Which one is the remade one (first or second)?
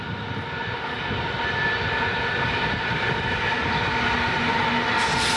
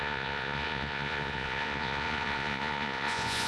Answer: second